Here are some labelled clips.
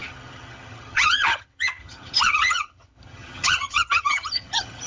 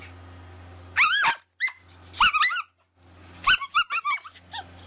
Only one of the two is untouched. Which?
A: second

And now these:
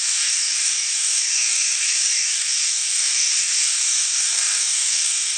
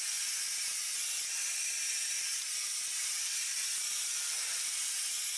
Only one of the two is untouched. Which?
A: second